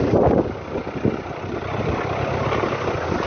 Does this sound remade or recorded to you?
recorded